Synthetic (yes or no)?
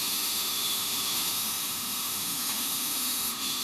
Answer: yes